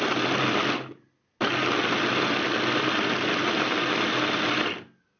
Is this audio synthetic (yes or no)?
no